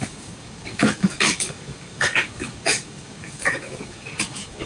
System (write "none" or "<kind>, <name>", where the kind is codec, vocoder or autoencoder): codec, DAC